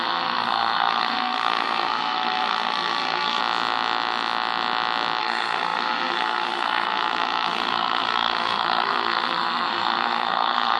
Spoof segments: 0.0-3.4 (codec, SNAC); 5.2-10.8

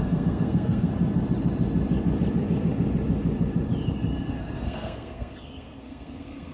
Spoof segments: 0.0-0.9 (codec, SNAC); 4.3-6.5